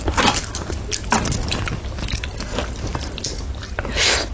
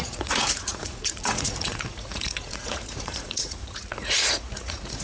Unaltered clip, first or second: first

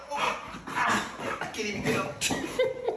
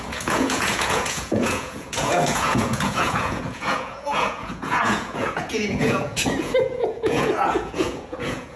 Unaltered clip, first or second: first